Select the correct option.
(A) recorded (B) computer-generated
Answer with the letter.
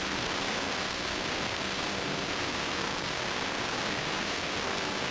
B